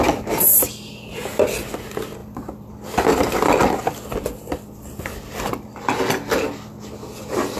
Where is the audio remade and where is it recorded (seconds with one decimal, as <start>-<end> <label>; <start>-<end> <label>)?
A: 0.0-2.2 recorded; 2.2-2.7 remade; 2.7-3.1 recorded; 3.1-5.4 remade; 5.4-7.6 recorded